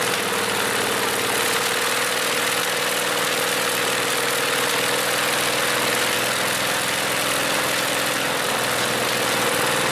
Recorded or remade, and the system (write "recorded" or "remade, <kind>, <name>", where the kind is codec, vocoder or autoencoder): recorded